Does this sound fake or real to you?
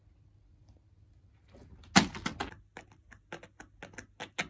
real